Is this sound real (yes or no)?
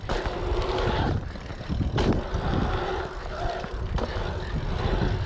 yes